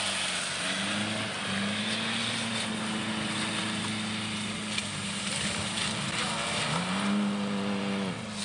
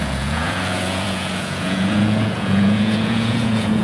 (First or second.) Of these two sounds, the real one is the first